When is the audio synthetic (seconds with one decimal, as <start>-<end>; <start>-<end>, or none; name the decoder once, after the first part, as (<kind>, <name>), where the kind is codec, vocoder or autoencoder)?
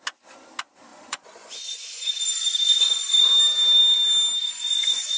0.9-3.3 (vocoder, Vocos); 4.4-5.2